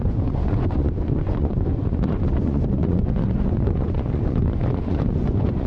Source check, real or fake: fake